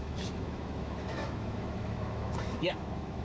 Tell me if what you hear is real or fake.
fake